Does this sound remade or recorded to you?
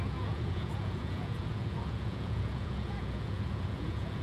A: remade